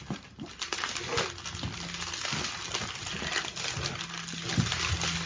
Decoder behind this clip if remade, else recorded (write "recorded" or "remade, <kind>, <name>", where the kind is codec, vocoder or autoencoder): recorded